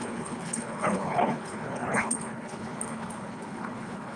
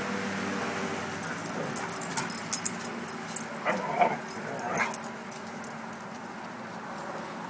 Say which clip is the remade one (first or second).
first